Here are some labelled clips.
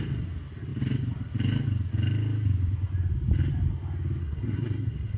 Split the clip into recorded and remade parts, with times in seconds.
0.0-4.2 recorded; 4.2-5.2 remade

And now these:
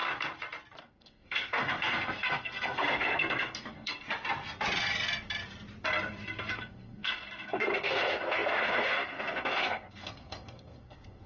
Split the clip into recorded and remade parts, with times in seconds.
0.0-0.8 recorded; 0.8-3.9 remade; 3.9-6.5 recorded; 6.5-11.3 remade

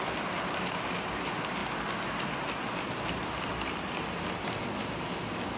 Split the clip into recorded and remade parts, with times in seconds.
0.0-5.6 recorded

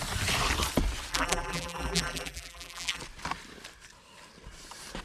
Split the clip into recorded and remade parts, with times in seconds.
0.0-1.1 recorded; 1.1-3.0 remade; 3.0-5.0 recorded

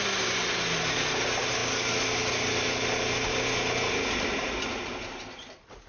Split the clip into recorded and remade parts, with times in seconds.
0.0-5.9 recorded

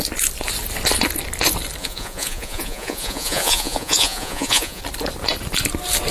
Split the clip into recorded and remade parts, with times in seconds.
0.0-1.8 recorded; 1.8-4.8 remade; 4.8-6.1 recorded